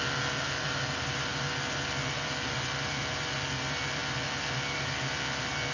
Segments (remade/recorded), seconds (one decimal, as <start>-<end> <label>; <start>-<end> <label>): 0.0-5.7 recorded